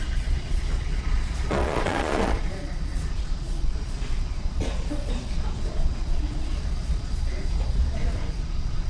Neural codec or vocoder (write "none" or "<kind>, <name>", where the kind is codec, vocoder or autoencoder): vocoder, Vocos